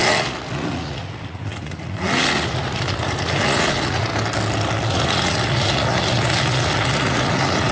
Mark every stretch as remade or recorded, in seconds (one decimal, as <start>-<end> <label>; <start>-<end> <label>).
0.0-4.1 remade; 4.1-4.9 recorded; 4.9-7.7 remade